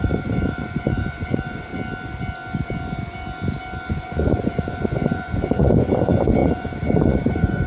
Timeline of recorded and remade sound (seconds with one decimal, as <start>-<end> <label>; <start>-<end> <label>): 0.0-1.7 remade; 1.7-3.9 recorded; 3.9-7.7 remade